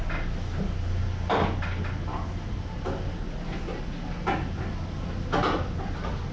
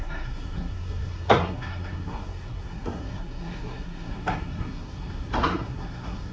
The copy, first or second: second